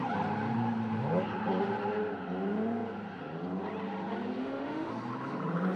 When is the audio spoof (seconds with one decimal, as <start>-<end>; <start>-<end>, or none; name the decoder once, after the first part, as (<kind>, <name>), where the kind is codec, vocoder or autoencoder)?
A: 4.4-4.9 (autoencoder, DAC-VAE)